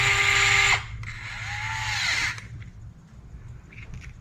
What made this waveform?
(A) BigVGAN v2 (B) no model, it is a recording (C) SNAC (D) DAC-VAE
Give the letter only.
B